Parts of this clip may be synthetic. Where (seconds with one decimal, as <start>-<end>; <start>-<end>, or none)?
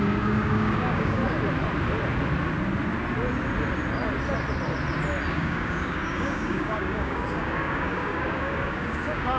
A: 0.0-1.2; 5.3-9.4